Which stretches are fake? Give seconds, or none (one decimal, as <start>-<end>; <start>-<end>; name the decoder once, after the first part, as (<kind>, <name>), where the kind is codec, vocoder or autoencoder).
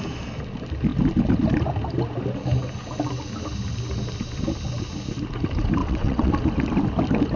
5.8-6.3 (vocoder, WaveNeXt)